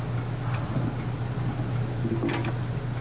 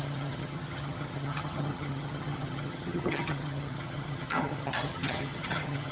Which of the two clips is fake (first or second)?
second